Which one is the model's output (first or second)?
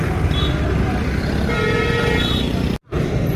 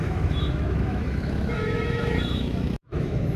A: second